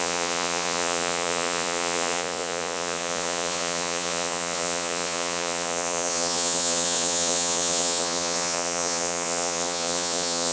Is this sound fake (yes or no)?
yes